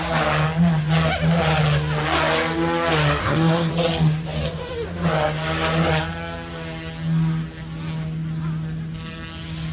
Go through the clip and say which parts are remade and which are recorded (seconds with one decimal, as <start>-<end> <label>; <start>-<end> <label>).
0.0-3.2 recorded; 3.2-3.7 remade; 3.7-9.7 recorded